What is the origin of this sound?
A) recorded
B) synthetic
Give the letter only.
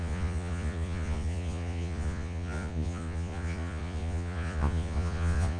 B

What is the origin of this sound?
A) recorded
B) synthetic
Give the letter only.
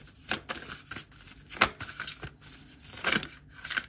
A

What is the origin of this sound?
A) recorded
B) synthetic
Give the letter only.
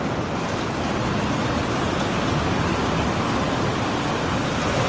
A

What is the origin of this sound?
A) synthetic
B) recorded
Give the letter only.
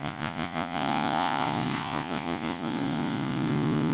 A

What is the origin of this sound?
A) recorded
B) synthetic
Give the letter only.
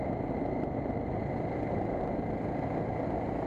A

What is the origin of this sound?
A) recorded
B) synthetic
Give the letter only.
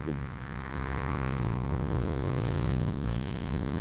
B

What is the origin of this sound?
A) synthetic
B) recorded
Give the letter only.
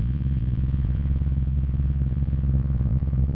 A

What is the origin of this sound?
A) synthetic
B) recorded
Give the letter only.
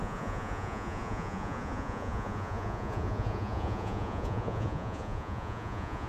A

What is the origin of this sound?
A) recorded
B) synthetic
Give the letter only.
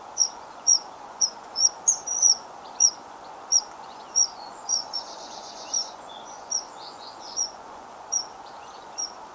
B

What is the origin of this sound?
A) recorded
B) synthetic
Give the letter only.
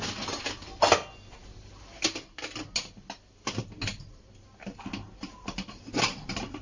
A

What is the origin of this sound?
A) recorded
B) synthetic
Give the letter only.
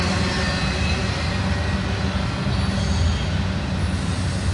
A